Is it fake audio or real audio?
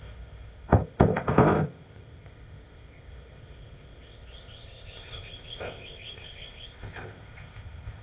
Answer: fake